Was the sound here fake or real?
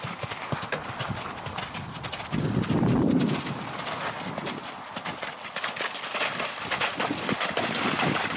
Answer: real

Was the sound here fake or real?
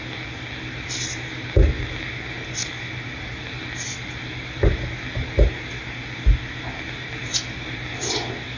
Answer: real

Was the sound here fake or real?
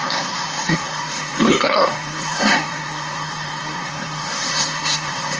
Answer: fake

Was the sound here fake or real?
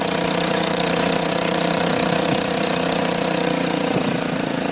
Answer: fake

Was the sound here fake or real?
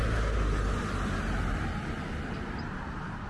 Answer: real